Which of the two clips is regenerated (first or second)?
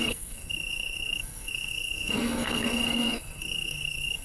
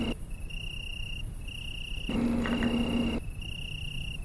first